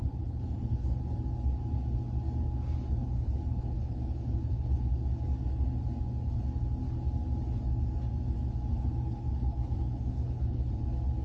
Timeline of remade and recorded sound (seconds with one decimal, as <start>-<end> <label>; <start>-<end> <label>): 0.0-1.0 remade; 1.0-3.0 recorded; 3.0-5.0 remade; 5.0-8.7 recorded; 8.7-10.7 remade; 10.7-11.2 recorded